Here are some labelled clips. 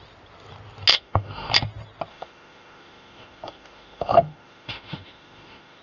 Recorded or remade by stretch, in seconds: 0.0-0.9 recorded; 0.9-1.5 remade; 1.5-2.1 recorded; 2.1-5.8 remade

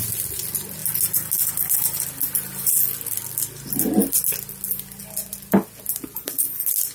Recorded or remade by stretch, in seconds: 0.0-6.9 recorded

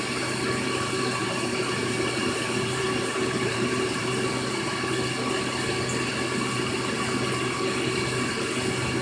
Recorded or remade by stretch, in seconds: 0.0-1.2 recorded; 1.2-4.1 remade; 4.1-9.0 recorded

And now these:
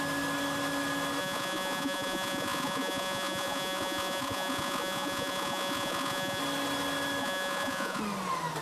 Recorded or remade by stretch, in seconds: 0.0-1.2 recorded; 1.2-6.4 remade; 6.4-7.2 recorded; 7.2-8.0 remade; 8.0-8.6 recorded

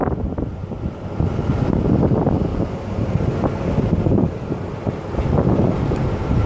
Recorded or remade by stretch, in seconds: 0.0-2.5 remade; 2.5-3.8 recorded; 3.8-6.5 remade